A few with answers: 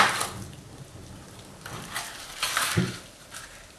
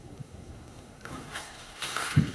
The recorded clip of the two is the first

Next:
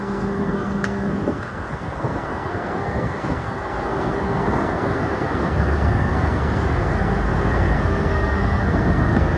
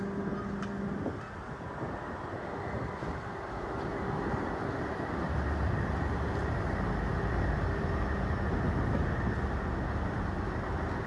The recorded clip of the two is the second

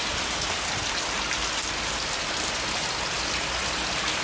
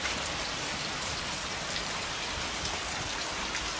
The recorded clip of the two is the first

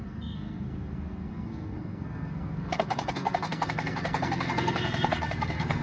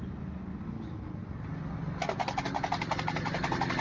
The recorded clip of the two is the second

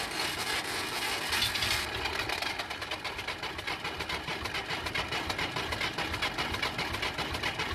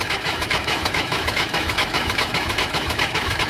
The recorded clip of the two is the first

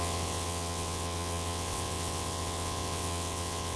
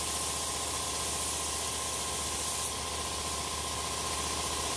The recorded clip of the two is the second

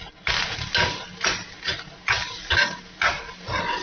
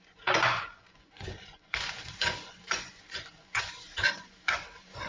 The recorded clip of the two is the first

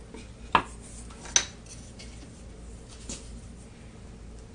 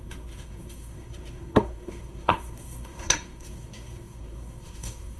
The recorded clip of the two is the first